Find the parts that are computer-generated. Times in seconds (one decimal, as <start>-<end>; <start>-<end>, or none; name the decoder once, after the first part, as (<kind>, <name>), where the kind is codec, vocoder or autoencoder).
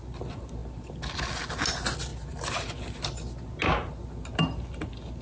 none